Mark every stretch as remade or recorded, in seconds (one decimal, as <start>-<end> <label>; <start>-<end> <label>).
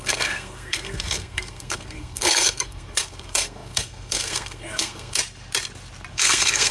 0.0-5.2 remade; 5.2-6.1 recorded; 6.1-6.7 remade